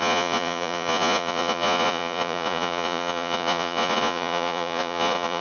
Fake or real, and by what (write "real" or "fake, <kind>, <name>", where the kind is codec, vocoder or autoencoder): fake, vocoder, Vocos